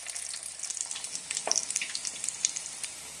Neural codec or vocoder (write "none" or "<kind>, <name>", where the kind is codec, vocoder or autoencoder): none